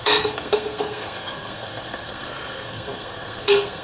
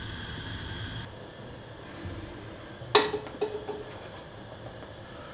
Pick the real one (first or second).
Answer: second